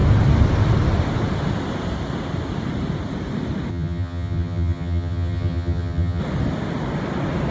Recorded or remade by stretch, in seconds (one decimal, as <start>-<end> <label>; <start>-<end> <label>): 0.0-3.7 recorded; 3.7-6.2 remade; 6.2-7.5 recorded